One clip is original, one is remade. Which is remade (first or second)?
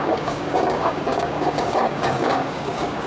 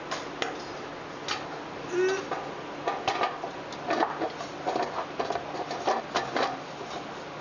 first